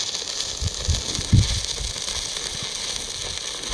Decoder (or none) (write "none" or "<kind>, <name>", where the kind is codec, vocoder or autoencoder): none